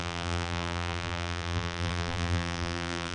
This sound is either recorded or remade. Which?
remade